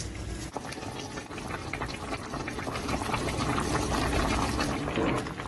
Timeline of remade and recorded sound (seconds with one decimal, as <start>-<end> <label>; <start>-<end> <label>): 0.0-1.6 recorded; 1.6-4.9 remade; 4.9-5.5 recorded